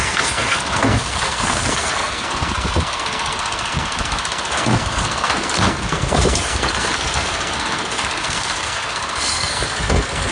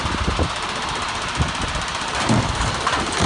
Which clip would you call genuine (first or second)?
second